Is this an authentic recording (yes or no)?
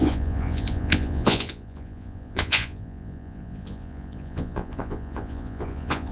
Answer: no